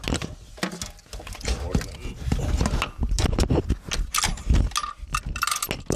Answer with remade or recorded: recorded